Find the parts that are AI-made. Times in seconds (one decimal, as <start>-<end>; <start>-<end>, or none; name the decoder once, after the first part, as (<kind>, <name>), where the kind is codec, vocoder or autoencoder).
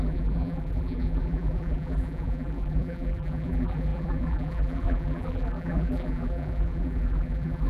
0.0-7.7 (vocoder, BigVGAN v2)